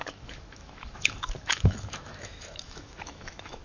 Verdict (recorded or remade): remade